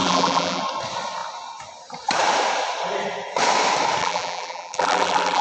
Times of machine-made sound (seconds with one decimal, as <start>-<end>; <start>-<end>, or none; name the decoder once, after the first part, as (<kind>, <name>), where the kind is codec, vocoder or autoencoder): 0.0-0.6 (vocoder, BigVGAN v2); 4.0-5.4